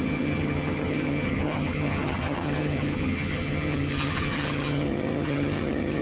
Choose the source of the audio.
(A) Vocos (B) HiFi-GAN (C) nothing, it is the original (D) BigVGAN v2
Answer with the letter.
B